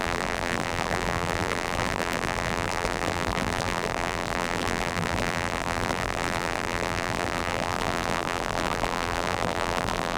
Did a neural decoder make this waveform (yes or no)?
yes